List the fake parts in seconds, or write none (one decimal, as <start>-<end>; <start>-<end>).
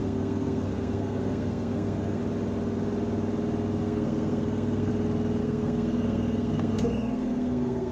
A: 0.0-2.2; 3.8-4.9; 5.4-7.9